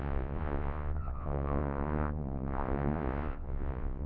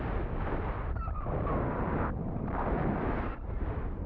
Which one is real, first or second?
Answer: second